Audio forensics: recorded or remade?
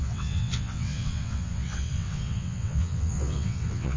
remade